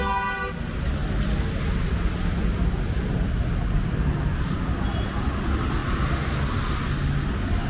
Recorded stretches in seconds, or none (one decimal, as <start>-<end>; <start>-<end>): 0.0-7.7